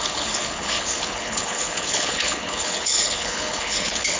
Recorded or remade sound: remade